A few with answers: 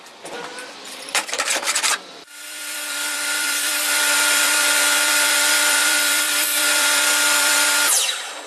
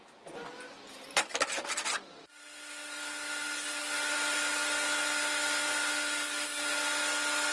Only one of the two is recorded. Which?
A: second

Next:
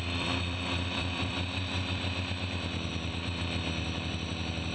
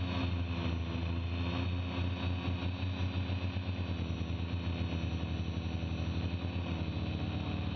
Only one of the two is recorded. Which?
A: second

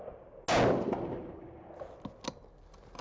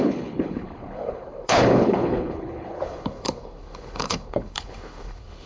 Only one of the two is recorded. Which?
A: first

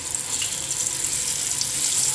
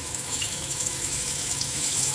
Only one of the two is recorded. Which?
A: first